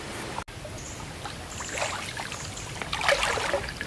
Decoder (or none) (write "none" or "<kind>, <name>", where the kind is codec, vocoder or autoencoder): none